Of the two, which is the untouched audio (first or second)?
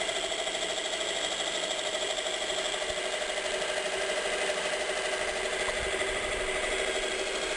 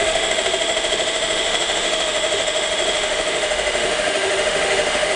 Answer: first